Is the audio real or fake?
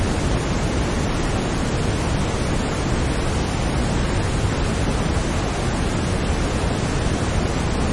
real